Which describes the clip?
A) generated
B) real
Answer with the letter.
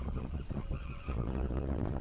A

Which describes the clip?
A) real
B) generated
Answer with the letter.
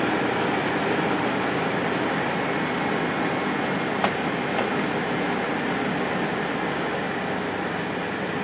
A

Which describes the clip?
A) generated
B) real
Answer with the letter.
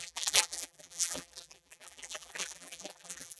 A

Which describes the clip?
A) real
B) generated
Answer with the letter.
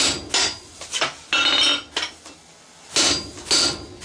A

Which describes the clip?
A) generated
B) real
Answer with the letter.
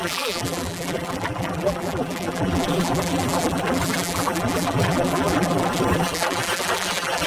A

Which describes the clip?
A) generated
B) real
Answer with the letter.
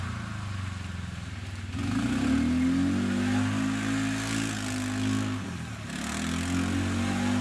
B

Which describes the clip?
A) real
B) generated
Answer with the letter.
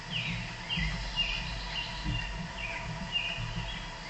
A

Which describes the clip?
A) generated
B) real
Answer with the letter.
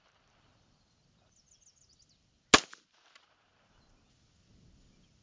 B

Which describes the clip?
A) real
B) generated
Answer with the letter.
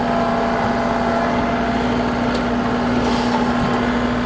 A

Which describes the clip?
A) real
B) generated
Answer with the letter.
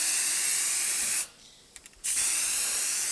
A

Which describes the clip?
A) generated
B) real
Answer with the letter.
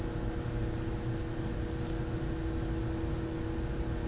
B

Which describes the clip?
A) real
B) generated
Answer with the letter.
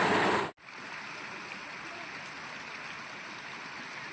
A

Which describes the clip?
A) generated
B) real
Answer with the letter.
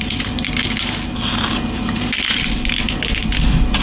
B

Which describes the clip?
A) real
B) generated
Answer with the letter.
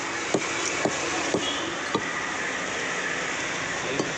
A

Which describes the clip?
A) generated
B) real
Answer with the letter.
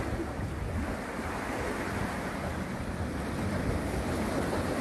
B